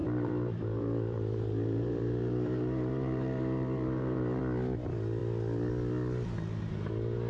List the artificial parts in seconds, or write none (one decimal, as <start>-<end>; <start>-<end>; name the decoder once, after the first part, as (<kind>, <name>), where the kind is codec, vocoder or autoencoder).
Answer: 0.0-4.4 (vocoder, BigVGAN v2)